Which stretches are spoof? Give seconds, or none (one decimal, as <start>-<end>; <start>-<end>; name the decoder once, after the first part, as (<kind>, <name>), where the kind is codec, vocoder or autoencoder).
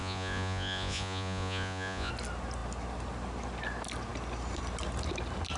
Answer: 0.0-2.1 (vocoder, Vocos)